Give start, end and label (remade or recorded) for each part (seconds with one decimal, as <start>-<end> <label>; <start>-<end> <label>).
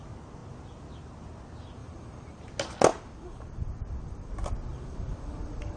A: 0.0-1.8 recorded; 1.8-2.4 remade; 2.4-2.9 recorded; 2.9-4.3 remade; 4.3-4.7 recorded; 4.7-5.8 remade